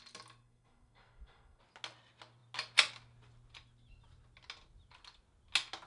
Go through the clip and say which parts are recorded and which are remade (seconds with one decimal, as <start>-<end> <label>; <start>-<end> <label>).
0.0-0.4 recorded; 0.4-1.6 remade; 1.6-5.9 recorded